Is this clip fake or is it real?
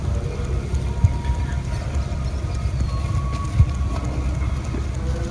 real